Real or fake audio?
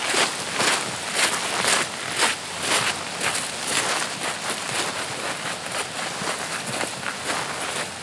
real